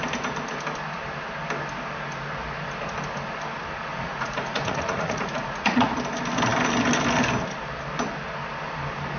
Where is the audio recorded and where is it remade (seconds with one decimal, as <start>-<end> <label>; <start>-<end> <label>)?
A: 0.0-3.9 recorded; 3.9-5.9 remade; 5.9-9.2 recorded